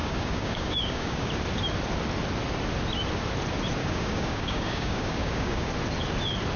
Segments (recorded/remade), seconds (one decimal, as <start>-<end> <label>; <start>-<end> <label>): 0.0-1.3 remade; 1.3-3.8 recorded; 3.8-5.7 remade; 5.7-6.6 recorded

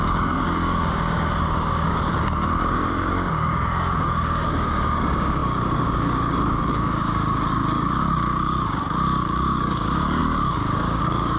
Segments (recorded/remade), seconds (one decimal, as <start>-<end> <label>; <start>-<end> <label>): 0.0-11.4 remade